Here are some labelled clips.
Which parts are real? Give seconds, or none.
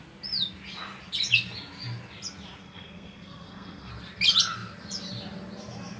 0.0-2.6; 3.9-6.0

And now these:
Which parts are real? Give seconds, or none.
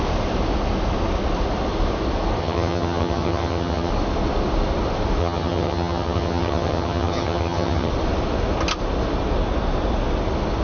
0.0-2.4; 3.9-5.2; 7.9-10.6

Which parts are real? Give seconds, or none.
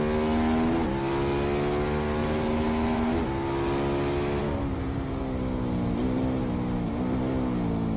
0.0-2.2; 3.2-4.4; 5.2-8.0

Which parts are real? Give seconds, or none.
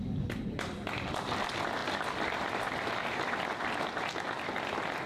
0.0-5.1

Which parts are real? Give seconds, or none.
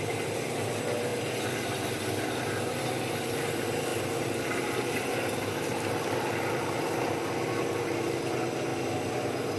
0.0-1.1; 2.0-9.6